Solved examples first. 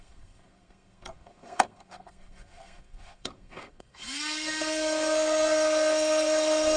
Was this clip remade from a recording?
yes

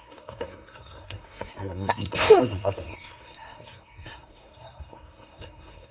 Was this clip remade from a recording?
yes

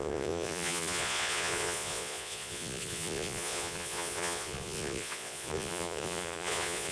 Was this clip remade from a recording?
yes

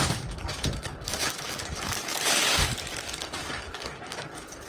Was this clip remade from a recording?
yes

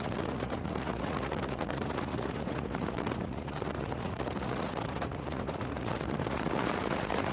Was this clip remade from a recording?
yes